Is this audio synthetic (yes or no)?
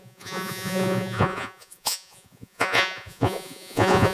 yes